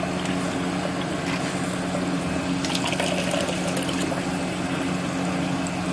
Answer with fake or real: real